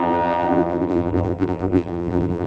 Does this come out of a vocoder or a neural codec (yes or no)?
yes